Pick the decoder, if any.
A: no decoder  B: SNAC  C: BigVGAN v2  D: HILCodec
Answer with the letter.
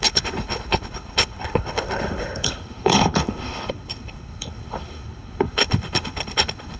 D